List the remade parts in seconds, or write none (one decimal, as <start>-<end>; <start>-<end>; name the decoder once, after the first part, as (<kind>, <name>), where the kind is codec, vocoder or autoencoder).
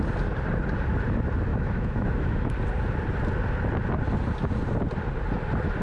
1.5-2.5 (autoencoder, DAC-VAE)